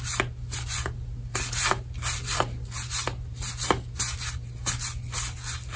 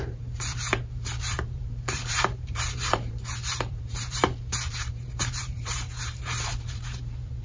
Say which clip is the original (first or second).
first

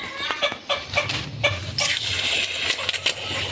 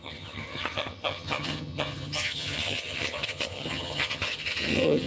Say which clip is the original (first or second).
first